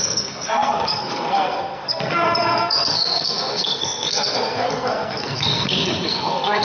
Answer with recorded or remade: remade